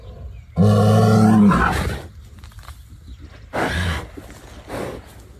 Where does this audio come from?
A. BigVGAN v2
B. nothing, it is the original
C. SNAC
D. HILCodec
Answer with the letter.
B